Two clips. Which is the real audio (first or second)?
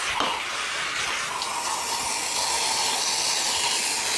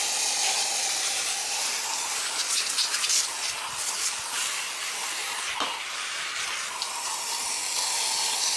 first